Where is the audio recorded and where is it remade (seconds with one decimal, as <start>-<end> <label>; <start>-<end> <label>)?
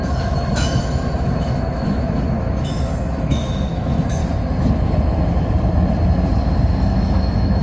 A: 0.0-4.2 remade; 4.2-6.7 recorded; 6.7-7.6 remade